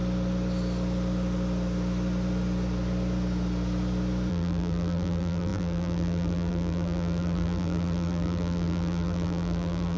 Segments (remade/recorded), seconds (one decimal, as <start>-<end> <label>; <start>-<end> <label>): 0.0-4.3 recorded; 4.3-10.0 remade